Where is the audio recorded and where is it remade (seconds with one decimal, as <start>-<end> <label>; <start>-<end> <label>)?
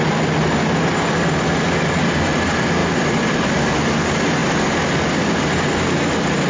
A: 0.0-2.8 recorded; 2.8-3.8 remade; 3.8-6.5 recorded